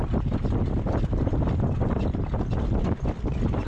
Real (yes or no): yes